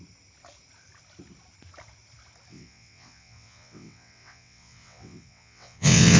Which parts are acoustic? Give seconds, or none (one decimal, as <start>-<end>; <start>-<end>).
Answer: 0.0-2.5